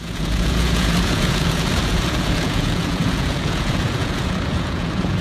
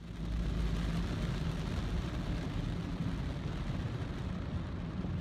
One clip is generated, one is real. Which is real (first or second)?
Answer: second